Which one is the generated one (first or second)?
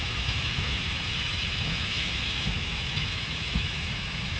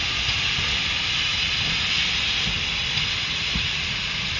first